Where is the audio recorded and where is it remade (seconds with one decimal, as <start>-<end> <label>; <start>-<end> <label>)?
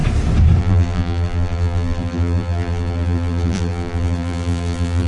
0.0-0.6 recorded; 0.6-5.1 remade